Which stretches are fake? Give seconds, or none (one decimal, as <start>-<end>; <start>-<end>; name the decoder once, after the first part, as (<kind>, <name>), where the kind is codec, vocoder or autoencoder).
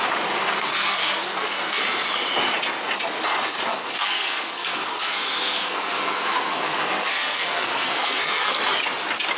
0.6-1.8 (codec, SNAC); 3.7-8.6